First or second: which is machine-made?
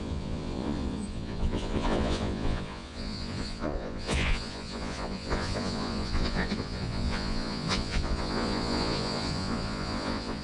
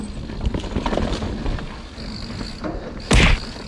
first